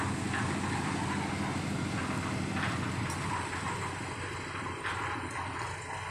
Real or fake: real